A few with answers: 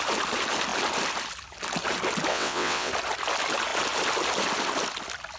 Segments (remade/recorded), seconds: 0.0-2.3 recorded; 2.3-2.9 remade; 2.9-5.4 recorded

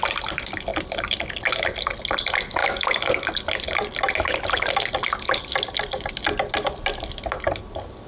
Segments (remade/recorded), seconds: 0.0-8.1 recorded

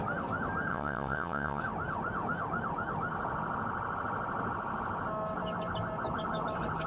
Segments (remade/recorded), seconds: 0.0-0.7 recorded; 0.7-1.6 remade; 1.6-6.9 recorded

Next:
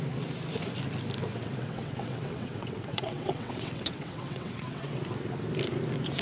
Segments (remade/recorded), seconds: 0.0-1.3 recorded; 1.3-5.0 remade; 5.0-6.2 recorded

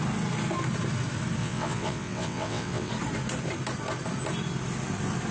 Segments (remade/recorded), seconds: 0.0-1.4 recorded; 1.4-2.9 remade; 2.9-5.3 recorded